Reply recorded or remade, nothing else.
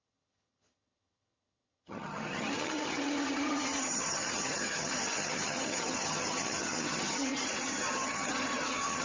remade